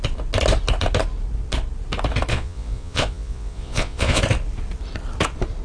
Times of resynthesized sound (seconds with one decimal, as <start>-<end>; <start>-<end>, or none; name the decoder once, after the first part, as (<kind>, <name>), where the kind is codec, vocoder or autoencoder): 2.3-4.2 (vocoder, Vocos)